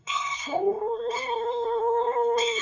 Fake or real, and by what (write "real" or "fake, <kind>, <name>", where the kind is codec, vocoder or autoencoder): fake, codec, SNAC